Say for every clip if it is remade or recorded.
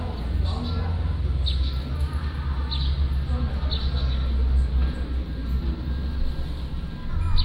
recorded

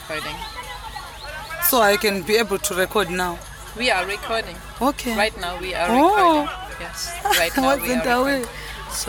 recorded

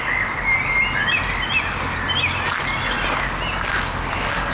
recorded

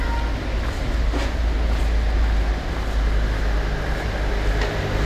recorded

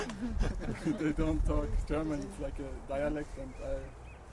recorded